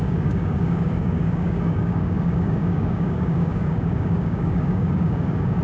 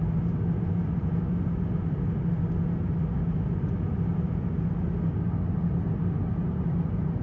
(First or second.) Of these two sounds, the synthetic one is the first